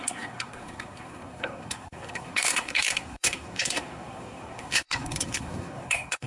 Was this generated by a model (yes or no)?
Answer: yes